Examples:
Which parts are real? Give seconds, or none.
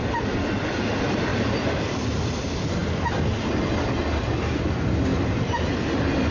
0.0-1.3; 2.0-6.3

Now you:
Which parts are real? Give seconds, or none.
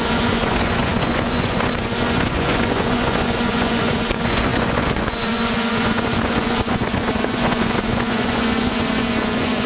none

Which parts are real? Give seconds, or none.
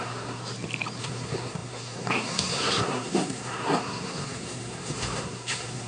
0.4-1.0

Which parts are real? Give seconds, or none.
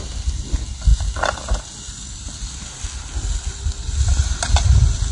0.0-5.1